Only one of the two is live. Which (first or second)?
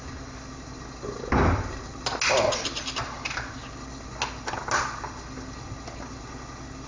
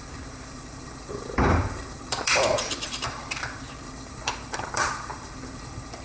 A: first